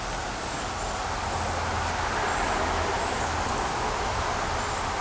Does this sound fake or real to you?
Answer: real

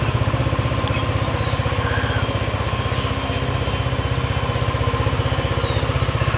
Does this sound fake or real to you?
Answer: real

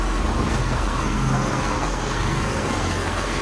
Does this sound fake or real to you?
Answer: fake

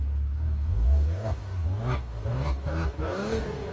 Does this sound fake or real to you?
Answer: fake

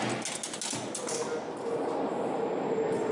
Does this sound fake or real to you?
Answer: real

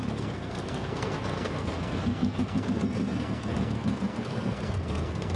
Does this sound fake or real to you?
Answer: fake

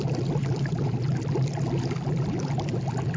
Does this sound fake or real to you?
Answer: real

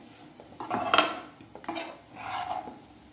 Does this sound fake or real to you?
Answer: real